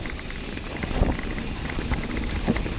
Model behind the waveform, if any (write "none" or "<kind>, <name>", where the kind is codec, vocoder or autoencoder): none